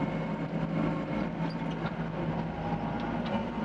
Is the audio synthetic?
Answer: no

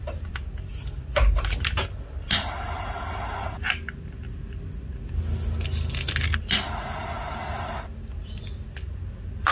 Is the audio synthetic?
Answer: no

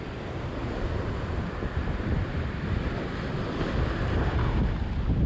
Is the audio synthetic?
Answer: no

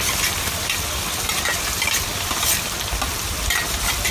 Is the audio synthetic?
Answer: yes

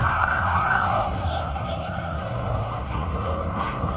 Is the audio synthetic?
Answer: yes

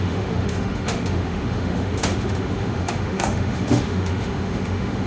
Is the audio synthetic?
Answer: yes